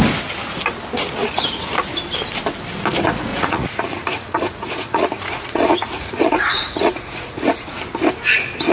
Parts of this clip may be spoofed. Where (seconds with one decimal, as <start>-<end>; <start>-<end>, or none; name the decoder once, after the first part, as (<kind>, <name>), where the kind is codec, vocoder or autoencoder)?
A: 1.2-1.8 (vocoder, Vocos); 3.3-7.8